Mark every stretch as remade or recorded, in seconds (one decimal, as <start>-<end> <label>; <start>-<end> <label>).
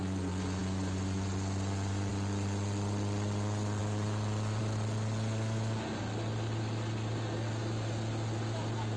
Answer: 0.0-9.0 recorded